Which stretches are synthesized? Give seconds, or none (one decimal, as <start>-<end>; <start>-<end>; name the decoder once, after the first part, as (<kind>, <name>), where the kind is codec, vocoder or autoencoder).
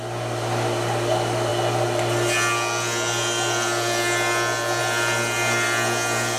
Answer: none